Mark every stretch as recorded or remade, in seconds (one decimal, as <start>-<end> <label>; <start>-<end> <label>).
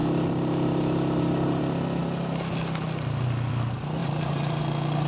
0.0-1.6 remade; 1.6-4.0 recorded; 4.0-4.6 remade; 4.6-5.1 recorded